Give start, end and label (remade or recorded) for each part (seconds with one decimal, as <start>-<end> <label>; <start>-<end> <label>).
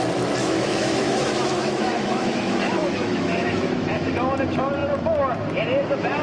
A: 0.0-0.4 recorded; 0.4-4.1 remade; 4.1-6.2 recorded